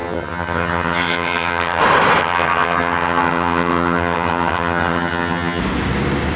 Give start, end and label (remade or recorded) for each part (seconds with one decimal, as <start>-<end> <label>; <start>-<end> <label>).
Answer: 0.0-1.8 remade; 1.8-2.2 recorded; 2.2-5.6 remade; 5.6-6.4 recorded